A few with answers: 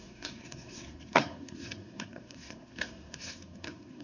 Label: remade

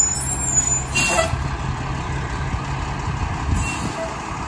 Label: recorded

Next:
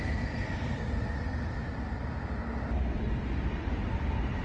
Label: recorded